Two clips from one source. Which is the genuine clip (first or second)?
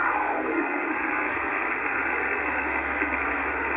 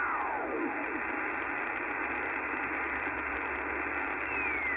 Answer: second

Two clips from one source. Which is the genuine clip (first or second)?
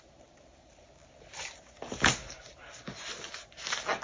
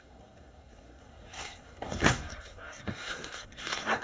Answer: first